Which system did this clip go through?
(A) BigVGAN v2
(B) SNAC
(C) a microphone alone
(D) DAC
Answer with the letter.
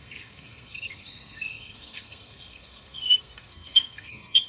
B